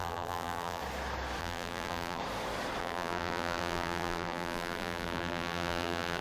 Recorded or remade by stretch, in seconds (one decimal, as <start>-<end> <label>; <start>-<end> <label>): 0.0-0.8 remade; 0.8-1.4 recorded; 1.4-2.2 remade; 2.2-2.8 recorded; 2.8-6.2 remade

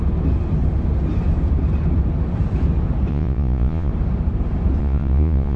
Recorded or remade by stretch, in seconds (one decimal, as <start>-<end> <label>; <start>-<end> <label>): 0.0-3.1 recorded; 3.1-3.9 remade; 3.9-4.8 recorded; 4.8-5.6 remade

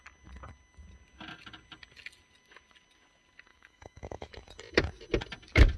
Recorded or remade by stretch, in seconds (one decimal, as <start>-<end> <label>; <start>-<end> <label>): 0.0-3.5 recorded; 3.5-4.3 remade; 4.3-5.8 recorded

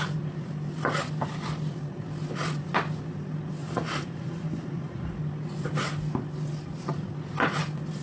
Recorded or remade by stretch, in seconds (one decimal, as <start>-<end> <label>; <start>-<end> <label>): 0.0-3.6 recorded; 3.6-5.1 remade; 5.1-8.0 recorded